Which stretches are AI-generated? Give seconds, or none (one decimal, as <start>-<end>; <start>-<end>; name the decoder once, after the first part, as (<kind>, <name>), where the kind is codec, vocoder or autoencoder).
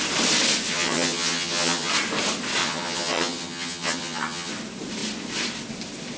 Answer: 0.7-1.9 (vocoder, HiFi-GAN); 2.6-4.5